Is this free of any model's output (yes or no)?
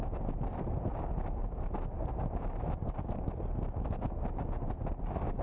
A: yes